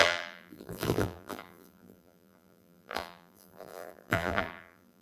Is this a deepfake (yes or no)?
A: yes